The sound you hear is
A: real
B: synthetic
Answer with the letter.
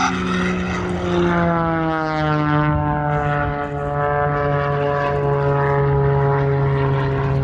A